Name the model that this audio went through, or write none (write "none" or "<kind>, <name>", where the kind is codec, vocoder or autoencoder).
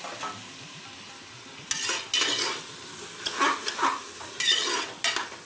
none